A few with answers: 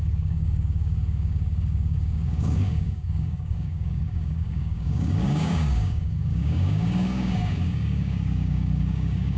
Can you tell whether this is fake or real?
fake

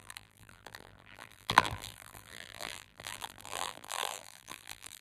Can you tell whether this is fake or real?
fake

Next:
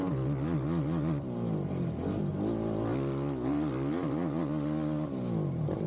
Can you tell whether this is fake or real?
real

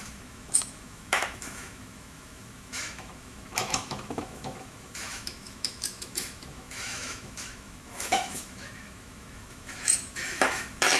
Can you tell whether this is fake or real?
fake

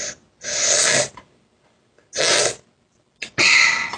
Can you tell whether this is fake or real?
real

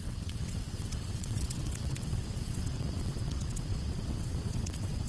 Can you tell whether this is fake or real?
fake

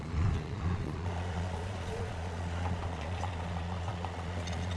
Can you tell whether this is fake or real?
fake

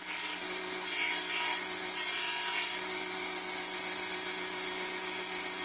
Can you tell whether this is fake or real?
real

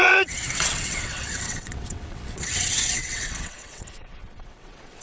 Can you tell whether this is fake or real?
fake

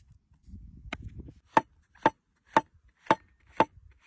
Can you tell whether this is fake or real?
real